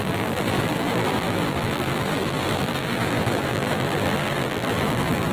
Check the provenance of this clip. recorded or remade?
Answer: remade